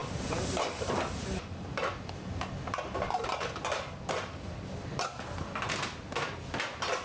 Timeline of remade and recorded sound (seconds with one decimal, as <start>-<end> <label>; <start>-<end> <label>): 0.0-7.0 recorded